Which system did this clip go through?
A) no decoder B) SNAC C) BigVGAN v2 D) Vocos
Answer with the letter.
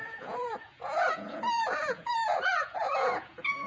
D